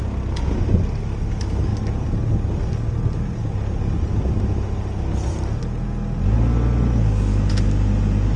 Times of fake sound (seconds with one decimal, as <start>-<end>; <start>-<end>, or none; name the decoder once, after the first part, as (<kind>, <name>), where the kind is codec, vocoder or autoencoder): none